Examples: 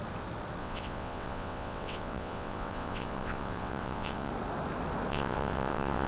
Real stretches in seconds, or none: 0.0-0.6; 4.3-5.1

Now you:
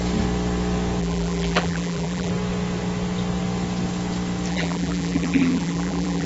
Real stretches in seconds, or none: 0.0-1.0; 2.3-4.5

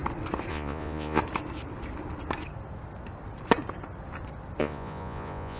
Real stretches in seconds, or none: 0.0-0.5; 1.2-4.6

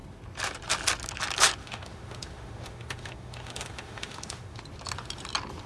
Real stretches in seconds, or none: 0.0-1.6; 4.6-5.7